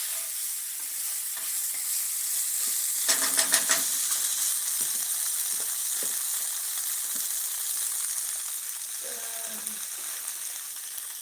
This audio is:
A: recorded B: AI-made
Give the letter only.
A